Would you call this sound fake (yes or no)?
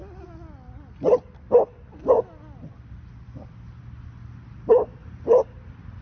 no